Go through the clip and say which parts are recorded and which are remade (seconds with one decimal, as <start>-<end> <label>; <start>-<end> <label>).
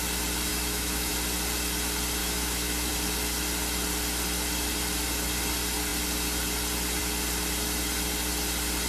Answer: 0.0-0.5 recorded; 0.5-1.1 remade; 1.1-2.2 recorded; 2.2-2.9 remade; 2.9-8.9 recorded